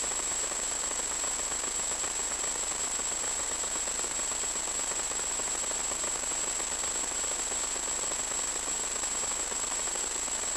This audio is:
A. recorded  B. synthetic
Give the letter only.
A